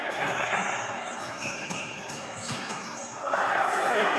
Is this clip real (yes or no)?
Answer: no